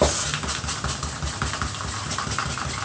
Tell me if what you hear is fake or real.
real